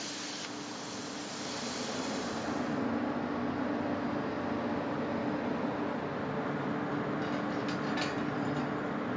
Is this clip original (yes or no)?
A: yes